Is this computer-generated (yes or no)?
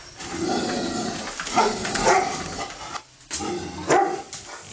no